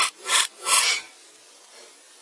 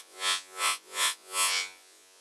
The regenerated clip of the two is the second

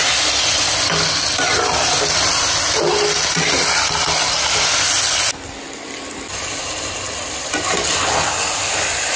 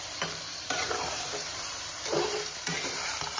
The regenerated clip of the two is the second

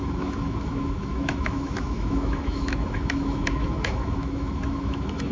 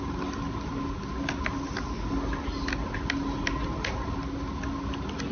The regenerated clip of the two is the first